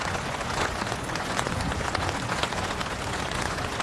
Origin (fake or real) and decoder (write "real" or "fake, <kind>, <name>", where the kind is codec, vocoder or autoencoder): fake, vocoder, Vocos